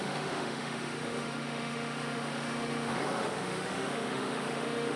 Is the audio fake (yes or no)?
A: yes